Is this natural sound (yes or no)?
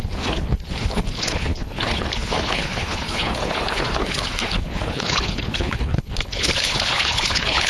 no